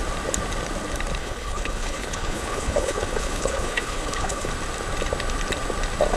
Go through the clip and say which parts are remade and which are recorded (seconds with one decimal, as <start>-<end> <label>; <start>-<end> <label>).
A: 0.0-1.2 recorded; 1.2-4.5 remade; 4.5-6.2 recorded

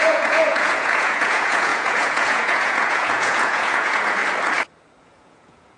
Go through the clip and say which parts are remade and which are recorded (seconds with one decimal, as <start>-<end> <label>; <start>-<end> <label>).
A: 0.0-4.2 remade; 4.2-5.0 recorded; 5.0-5.8 remade

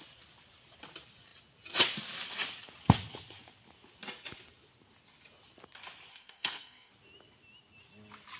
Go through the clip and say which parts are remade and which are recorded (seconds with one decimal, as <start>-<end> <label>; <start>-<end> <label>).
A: 0.0-6.1 recorded; 6.1-6.9 remade; 6.9-8.4 recorded

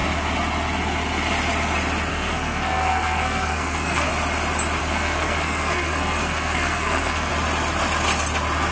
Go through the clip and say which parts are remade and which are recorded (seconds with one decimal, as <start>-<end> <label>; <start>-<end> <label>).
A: 0.0-2.1 recorded; 2.1-4.1 remade; 4.1-4.8 recorded; 4.8-7.3 remade; 7.3-8.7 recorded

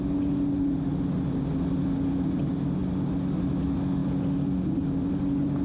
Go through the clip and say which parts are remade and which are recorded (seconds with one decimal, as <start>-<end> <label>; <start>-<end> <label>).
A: 0.0-5.6 recorded

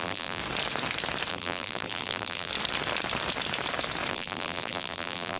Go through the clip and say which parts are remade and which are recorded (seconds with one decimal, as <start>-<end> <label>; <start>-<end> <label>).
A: 0.0-0.4 remade; 0.4-1.3 recorded; 1.3-2.5 remade; 2.5-4.1 recorded; 4.1-5.4 remade